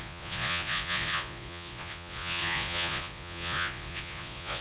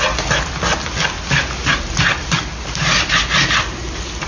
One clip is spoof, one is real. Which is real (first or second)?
second